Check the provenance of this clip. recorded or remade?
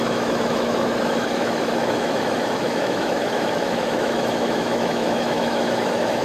remade